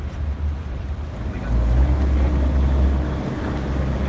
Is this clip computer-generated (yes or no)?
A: no